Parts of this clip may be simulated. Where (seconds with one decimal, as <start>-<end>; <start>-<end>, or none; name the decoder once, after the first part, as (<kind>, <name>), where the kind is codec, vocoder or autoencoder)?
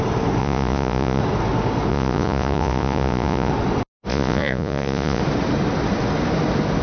0.4-1.2 (vocoder, Vocos); 1.9-3.5; 4.1-5.2